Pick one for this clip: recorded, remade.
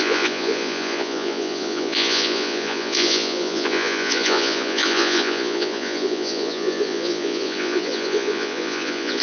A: remade